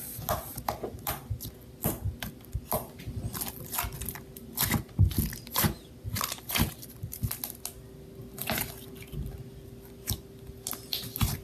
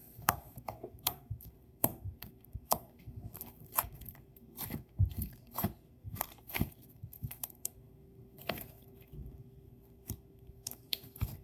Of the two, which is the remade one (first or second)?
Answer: second